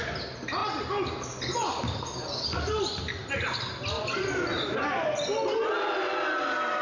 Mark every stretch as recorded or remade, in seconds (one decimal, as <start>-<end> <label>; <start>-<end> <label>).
0.0-6.8 recorded